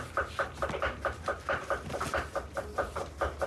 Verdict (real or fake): real